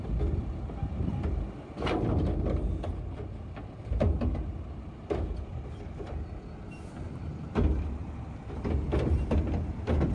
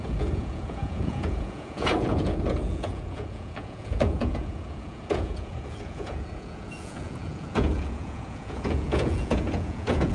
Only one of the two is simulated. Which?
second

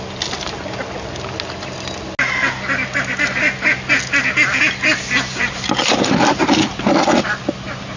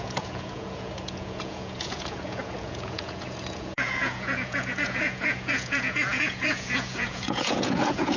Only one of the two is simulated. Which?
second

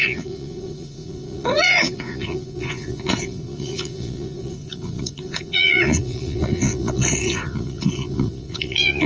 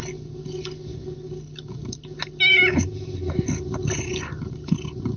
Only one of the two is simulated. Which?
first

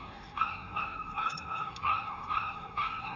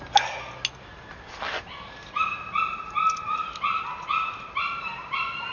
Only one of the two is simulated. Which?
first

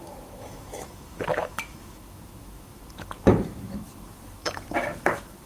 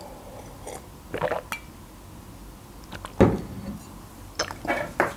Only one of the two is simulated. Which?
first